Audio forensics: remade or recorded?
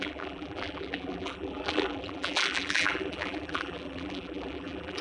remade